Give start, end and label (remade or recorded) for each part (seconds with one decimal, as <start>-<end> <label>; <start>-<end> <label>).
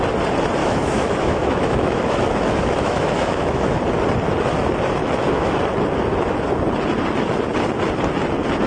0.0-0.6 recorded; 0.6-3.8 remade; 3.8-5.0 recorded; 5.0-5.6 remade; 5.6-8.7 recorded